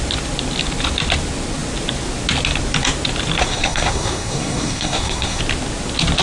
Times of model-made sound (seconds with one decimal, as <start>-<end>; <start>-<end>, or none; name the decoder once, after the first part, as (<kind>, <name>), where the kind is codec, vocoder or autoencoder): 3.4-5.4 (codec, SNAC)